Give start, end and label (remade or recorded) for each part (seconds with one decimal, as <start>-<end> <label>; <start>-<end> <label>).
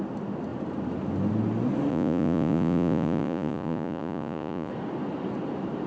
0.0-1.9 recorded; 1.9-4.7 remade; 4.7-5.9 recorded